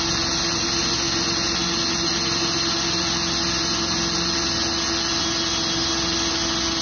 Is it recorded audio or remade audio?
recorded